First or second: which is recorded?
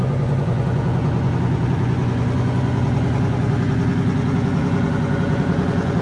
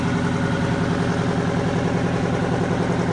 second